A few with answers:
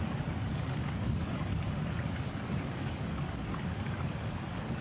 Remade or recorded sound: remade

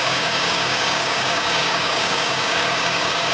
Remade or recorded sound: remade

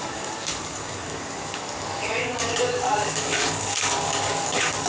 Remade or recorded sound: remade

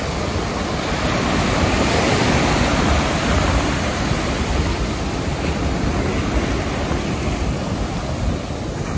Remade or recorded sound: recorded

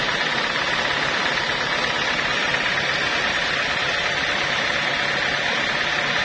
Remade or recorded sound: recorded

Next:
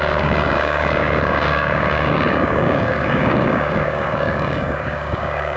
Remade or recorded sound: remade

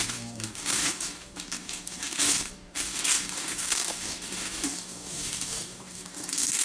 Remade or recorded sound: remade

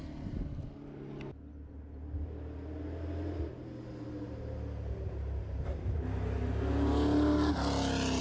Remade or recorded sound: recorded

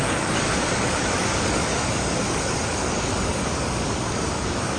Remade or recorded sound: remade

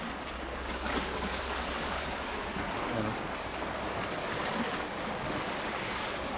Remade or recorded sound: remade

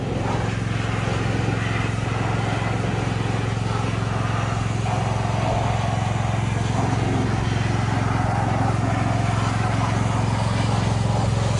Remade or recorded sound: recorded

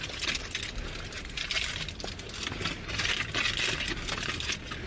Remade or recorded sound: recorded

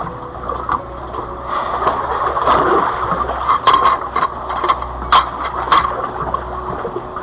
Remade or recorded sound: recorded